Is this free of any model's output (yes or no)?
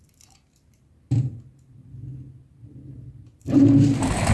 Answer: yes